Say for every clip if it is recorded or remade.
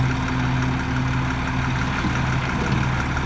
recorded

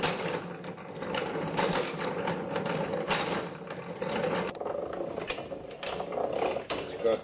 recorded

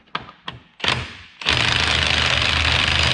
recorded